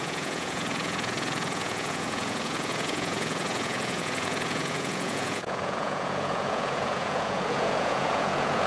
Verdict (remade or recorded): remade